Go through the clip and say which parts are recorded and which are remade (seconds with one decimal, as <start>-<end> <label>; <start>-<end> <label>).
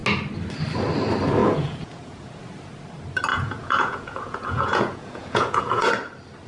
0.0-1.4 recorded; 1.4-2.4 remade; 2.4-3.3 recorded; 3.3-5.9 remade; 5.9-6.5 recorded